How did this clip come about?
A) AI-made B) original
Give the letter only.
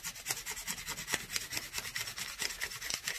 B